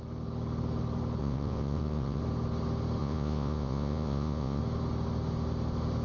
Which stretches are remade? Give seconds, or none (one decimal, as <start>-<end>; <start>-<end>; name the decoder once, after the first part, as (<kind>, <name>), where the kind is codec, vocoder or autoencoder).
1.2-2.2 (vocoder, Vocos); 3.0-4.6